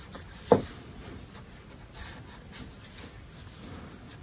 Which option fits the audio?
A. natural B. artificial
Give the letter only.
A